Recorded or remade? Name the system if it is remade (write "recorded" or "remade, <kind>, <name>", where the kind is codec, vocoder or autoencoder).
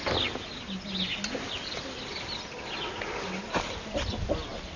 recorded